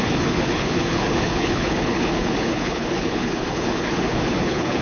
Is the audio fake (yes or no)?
yes